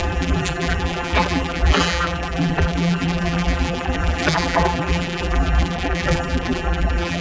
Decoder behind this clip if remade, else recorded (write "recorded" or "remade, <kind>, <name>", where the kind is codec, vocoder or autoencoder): remade, vocoder, BigVGAN v2